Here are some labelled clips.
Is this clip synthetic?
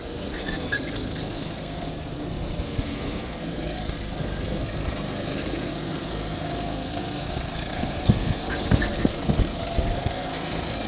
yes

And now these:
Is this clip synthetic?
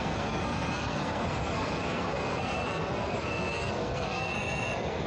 yes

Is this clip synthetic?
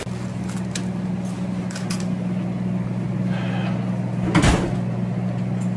no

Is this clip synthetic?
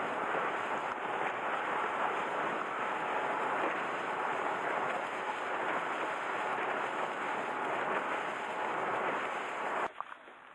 no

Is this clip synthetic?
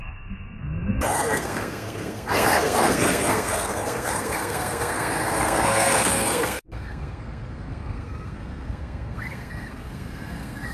yes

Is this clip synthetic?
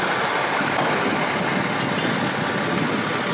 no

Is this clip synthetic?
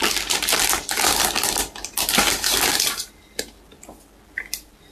no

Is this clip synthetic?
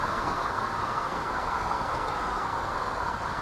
yes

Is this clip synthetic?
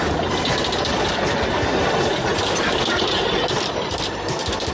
no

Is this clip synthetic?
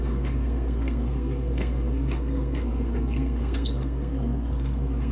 yes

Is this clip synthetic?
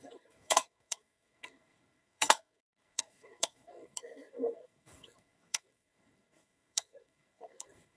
yes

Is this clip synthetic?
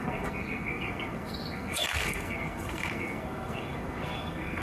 yes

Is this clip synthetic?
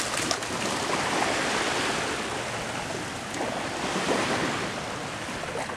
no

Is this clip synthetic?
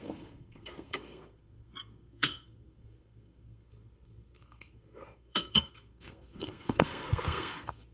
yes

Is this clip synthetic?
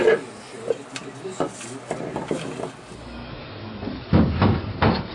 no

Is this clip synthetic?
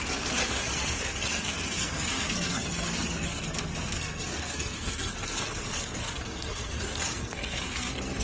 yes